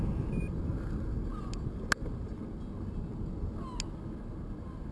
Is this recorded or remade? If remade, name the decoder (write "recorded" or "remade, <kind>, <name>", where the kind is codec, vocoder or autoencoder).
recorded